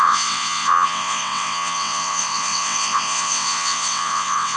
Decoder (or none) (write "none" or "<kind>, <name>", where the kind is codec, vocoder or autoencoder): vocoder, WaveNeXt